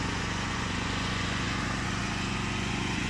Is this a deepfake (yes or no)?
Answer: yes